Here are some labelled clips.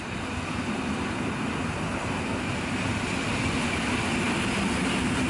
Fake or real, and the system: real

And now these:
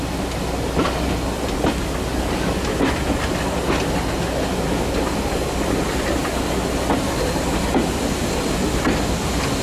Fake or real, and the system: real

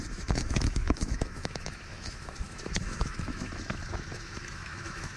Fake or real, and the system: fake, autoencoder, DAC-VAE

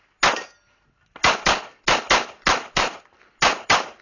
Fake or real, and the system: real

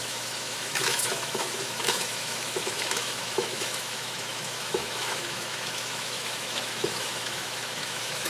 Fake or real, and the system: fake, autoencoder, DAC-VAE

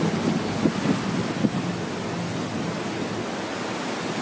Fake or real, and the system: real